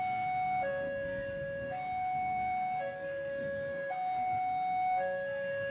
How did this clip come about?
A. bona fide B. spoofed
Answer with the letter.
B